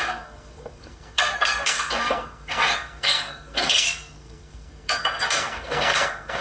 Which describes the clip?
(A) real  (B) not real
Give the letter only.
B